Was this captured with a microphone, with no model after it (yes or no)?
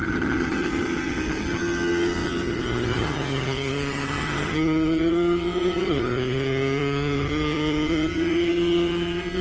no